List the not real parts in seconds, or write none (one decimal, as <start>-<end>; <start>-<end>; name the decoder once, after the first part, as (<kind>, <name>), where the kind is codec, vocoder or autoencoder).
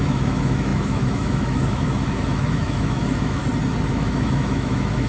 0.0-3.4 (autoencoder, DAC-VAE); 3.9-5.1